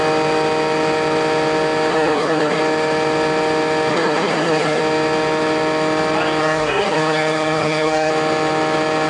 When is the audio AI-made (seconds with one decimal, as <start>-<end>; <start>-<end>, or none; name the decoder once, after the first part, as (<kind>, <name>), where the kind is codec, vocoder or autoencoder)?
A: 1.9-2.6 (codec, SNAC); 3.9-4.8; 6.4-8.1